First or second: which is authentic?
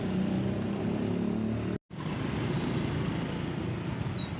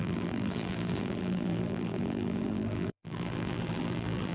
first